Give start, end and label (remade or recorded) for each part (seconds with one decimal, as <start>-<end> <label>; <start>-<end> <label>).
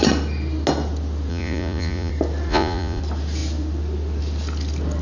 0.0-1.3 recorded; 1.3-2.1 remade; 2.1-2.5 recorded; 2.5-3.0 remade; 3.0-5.0 recorded